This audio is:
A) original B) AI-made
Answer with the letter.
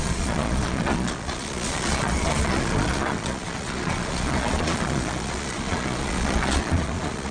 B